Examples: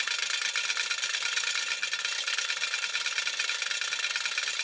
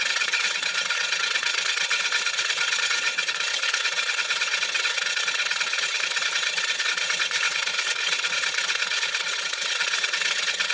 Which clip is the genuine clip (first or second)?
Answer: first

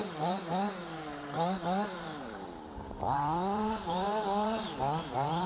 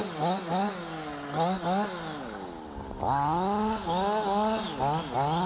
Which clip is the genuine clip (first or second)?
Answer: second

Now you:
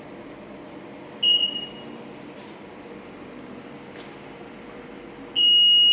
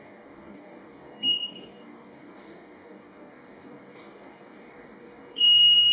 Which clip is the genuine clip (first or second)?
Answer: first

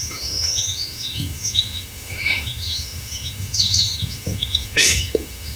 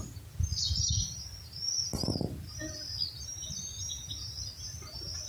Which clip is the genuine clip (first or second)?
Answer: second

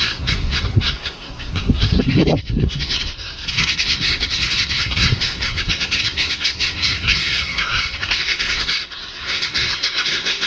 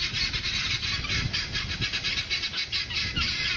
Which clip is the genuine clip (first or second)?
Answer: second